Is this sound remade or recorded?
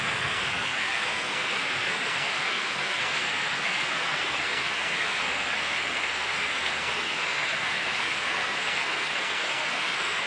remade